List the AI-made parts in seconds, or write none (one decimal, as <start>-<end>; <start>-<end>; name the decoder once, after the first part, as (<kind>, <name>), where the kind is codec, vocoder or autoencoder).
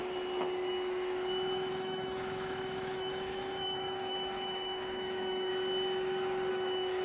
1.7-5.5 (autoencoder, DAC-VAE); 6.5-7.0